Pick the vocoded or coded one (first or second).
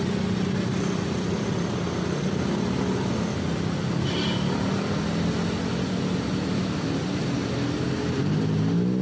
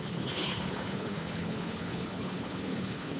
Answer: second